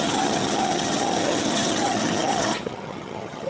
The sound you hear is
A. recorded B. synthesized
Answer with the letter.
B